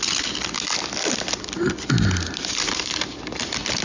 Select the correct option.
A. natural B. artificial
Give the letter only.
A